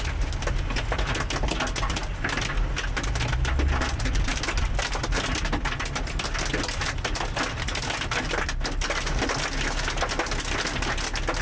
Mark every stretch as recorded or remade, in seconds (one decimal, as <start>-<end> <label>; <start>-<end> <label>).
0.0-11.4 recorded